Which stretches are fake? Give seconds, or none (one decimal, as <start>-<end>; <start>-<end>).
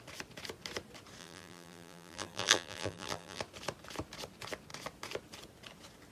1.2-3.4